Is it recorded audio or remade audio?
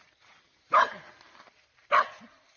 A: recorded